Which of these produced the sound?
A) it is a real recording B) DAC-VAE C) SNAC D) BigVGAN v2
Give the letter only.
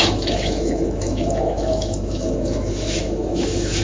B